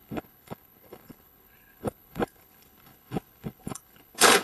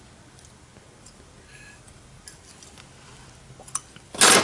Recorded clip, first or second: second